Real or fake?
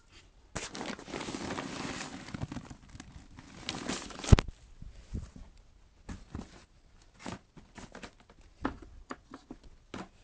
real